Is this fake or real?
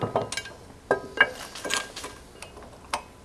real